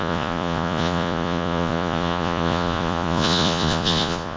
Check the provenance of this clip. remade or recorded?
remade